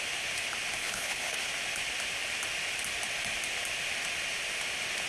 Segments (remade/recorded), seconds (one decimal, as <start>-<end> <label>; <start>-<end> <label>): 0.0-0.8 recorded; 0.8-1.5 remade; 1.5-5.1 recorded